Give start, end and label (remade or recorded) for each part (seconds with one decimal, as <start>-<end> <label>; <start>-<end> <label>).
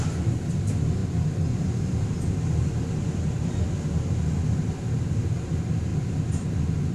0.0-6.9 recorded